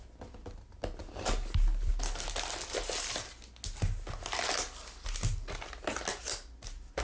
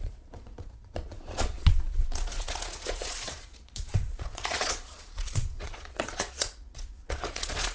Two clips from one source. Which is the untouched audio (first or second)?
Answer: first